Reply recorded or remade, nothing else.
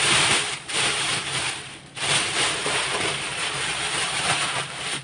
remade